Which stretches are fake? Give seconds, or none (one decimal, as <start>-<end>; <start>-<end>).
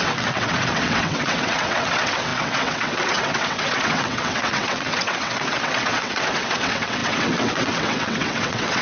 0.0-8.8